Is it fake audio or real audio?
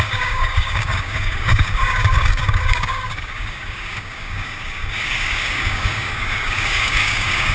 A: fake